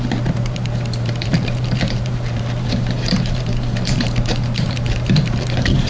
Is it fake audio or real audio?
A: fake